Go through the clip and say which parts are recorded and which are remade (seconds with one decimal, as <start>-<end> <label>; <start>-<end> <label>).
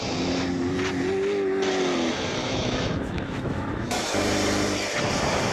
0.0-2.4 recorded; 2.4-4.2 remade; 4.2-5.5 recorded